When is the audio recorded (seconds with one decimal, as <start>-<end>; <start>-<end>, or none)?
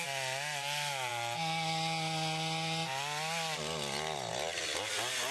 0.0-5.3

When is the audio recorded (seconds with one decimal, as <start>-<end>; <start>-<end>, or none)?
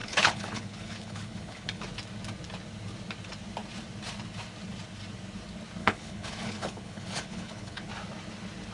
1.8-5.8; 7.9-8.7